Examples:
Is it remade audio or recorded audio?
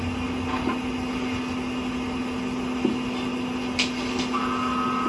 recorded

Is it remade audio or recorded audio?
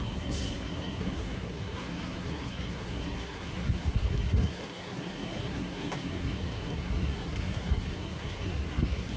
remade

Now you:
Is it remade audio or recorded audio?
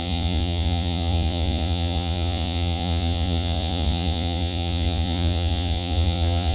remade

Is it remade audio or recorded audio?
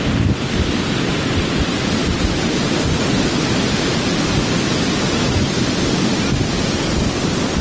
recorded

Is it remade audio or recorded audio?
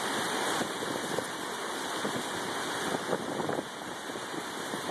recorded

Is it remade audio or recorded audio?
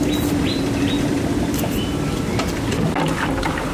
recorded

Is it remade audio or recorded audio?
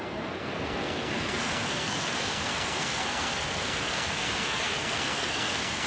remade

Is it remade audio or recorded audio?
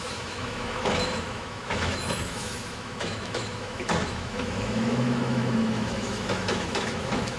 remade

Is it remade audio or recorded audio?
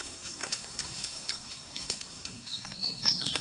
remade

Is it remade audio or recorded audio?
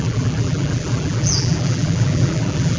remade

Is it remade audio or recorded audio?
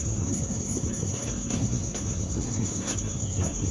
remade